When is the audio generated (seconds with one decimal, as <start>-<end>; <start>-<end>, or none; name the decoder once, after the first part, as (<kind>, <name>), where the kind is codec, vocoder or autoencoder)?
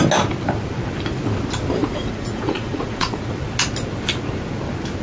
1.8-3.3 (vocoder, Vocos)